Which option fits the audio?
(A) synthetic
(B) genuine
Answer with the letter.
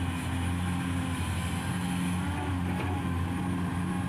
B